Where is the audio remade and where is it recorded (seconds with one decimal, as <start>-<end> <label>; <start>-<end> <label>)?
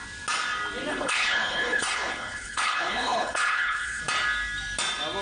0.0-0.9 recorded; 0.9-4.0 remade; 4.0-5.2 recorded